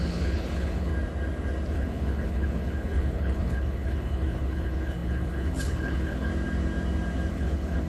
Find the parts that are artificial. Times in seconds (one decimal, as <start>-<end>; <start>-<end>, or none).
0.0-0.9; 1.7-6.3; 7.3-7.9